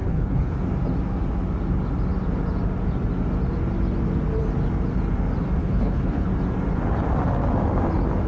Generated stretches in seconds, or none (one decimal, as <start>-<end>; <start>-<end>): 0.0-0.6; 5.6-6.3